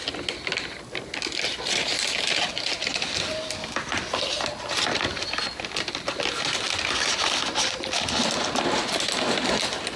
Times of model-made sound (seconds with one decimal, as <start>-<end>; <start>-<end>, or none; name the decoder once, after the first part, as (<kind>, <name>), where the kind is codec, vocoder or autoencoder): none